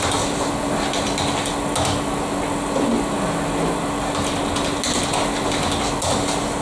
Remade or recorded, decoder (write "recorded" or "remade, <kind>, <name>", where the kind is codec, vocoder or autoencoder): recorded